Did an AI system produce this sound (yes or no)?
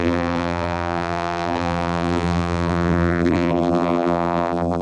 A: yes